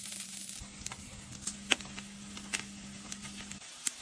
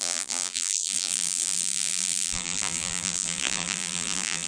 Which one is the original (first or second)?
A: first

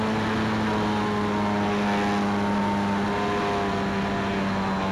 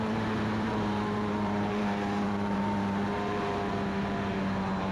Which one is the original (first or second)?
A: first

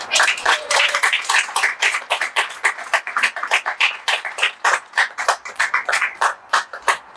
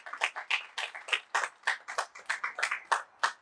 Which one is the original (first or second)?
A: second